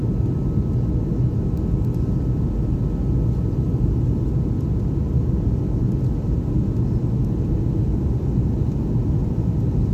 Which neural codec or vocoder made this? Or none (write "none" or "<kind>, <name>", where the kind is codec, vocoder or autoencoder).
none